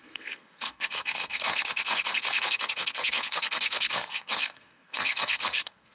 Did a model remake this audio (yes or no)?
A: yes